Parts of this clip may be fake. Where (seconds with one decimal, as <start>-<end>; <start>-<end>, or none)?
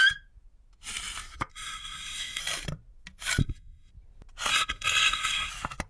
1.5-2.4; 3.4-3.9; 4.5-5.5